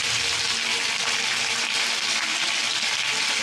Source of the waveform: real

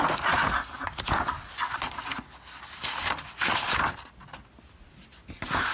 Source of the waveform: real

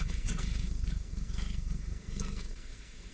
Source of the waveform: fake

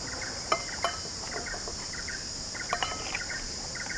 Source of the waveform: real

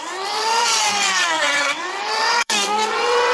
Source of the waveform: fake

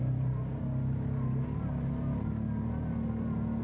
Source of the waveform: real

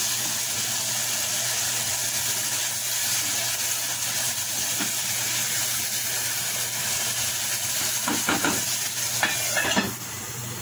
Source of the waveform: real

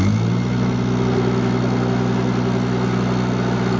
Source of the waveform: real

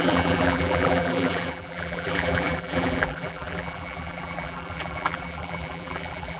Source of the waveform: fake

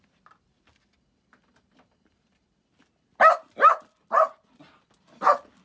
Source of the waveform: real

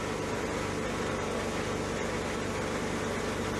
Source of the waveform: real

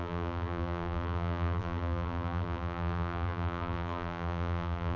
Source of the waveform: fake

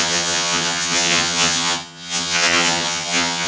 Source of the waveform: fake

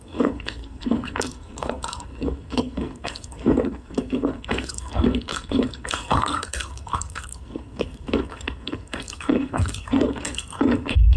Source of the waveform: fake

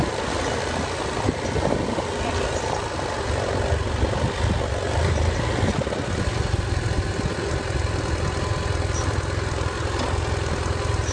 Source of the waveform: real